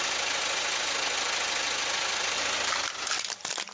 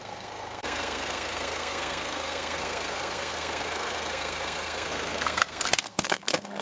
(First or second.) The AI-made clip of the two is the second